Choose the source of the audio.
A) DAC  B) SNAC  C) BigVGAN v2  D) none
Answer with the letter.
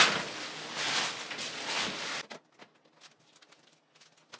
D